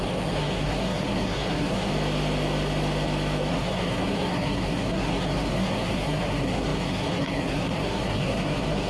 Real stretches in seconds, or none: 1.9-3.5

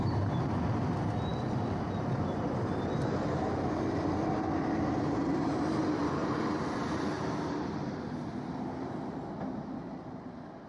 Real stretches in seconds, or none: 0.0-10.7

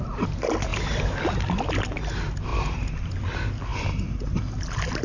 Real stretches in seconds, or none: 0.0-0.7; 1.5-2.5; 3.1-3.7; 4.4-5.0

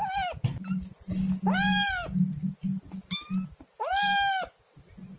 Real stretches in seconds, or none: 0.0-5.2

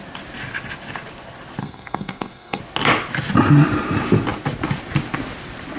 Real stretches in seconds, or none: 0.0-1.6; 2.6-5.8